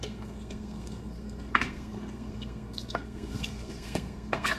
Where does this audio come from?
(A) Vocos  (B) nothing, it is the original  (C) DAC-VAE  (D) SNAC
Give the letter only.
D